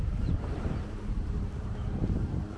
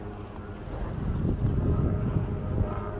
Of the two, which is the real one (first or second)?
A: second